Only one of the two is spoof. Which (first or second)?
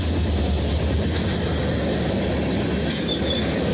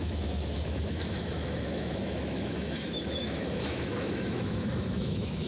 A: second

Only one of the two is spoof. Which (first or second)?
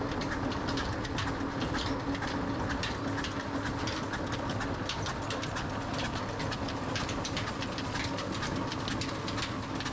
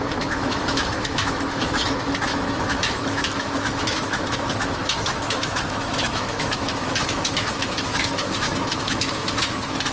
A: second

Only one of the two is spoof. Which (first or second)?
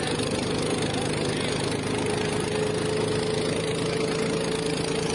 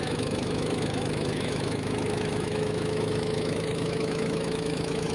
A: second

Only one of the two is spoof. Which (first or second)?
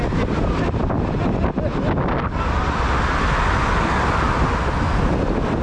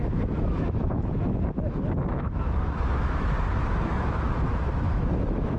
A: second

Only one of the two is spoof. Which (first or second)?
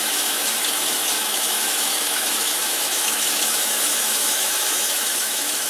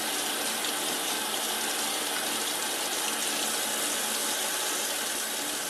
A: first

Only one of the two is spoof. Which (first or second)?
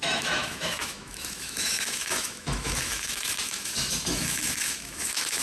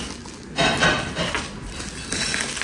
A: first